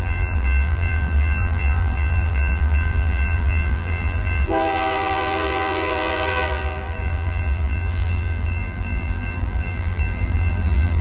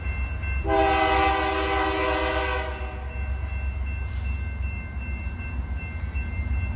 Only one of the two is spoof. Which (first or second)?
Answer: first